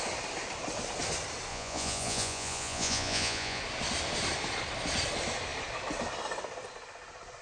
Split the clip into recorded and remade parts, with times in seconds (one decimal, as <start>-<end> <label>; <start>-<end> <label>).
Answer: 0.0-1.5 recorded; 1.5-3.6 remade; 3.6-7.4 recorded